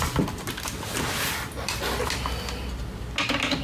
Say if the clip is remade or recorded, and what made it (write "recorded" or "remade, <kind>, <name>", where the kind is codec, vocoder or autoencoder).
recorded